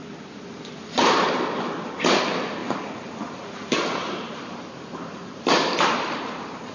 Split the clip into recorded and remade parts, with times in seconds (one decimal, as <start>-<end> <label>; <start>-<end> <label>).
0.0-2.2 remade; 2.2-2.6 recorded; 2.6-6.7 remade